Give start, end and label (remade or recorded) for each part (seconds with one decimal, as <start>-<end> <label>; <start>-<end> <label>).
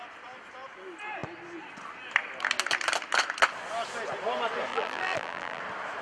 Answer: 0.0-4.7 recorded; 4.7-5.6 remade; 5.6-6.0 recorded